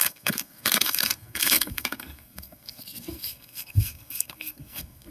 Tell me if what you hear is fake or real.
fake